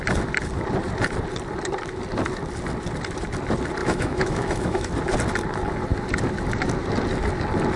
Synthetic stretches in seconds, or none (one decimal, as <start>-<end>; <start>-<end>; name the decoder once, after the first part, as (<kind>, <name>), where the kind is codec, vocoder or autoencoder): 3.8-4.9 (autoencoder, DAC-VAE)